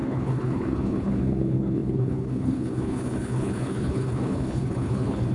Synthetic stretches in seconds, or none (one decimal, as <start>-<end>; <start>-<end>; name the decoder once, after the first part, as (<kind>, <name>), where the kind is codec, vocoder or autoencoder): 0.0-5.3 (codec, HILCodec)